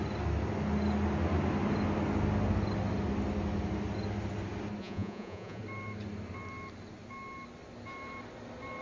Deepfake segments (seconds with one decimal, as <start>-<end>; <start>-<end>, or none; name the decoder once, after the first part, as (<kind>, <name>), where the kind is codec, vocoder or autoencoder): 4.8-5.6 (vocoder, Vocos)